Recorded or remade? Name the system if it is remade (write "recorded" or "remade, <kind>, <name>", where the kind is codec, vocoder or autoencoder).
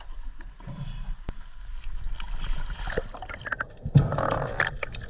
recorded